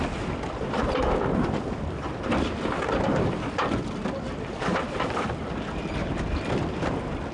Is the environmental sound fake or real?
real